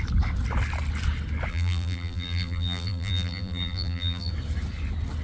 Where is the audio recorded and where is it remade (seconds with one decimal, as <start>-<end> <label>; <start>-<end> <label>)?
0.0-1.5 recorded; 1.5-4.3 remade; 4.3-5.2 recorded